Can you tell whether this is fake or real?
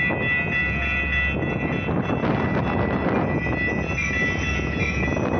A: real